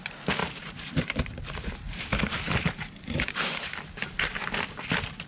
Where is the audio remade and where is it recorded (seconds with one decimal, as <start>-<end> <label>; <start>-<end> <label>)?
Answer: 0.0-0.4 recorded; 0.4-3.6 remade; 3.6-5.3 recorded